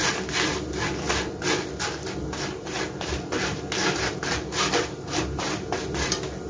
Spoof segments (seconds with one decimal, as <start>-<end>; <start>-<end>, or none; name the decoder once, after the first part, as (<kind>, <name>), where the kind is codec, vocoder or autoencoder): none